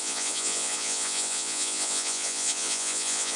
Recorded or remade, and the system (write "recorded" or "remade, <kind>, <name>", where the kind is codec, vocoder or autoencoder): remade, vocoder, Vocos